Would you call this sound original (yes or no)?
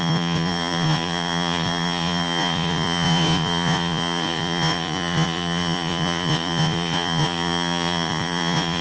no